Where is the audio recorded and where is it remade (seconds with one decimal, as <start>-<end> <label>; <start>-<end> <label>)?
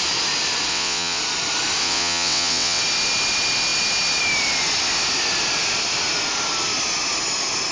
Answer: 0.0-0.7 recorded; 0.7-1.2 remade; 1.2-1.8 recorded; 1.8-2.8 remade; 2.8-7.7 recorded